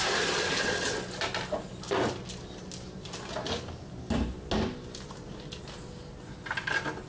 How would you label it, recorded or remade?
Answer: recorded